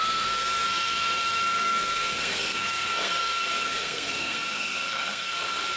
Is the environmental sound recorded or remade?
remade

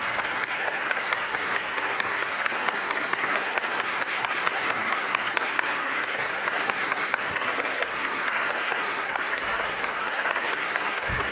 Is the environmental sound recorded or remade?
remade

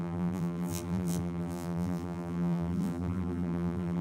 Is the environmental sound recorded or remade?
remade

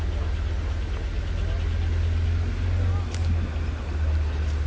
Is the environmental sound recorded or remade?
recorded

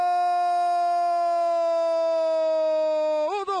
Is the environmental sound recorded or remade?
recorded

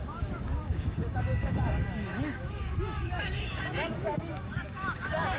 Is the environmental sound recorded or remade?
remade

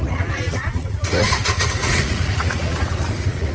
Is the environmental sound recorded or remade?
remade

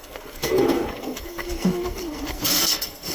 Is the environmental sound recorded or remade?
remade